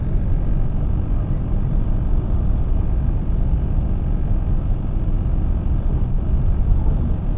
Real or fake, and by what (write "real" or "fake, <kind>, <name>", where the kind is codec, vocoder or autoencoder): real